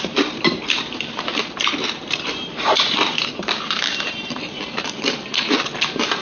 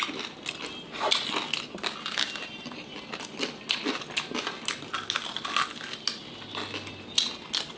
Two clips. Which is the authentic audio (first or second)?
second